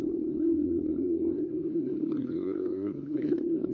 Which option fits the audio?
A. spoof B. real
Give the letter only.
A